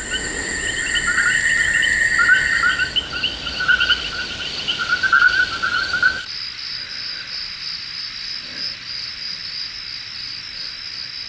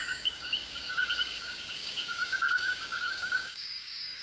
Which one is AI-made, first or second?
second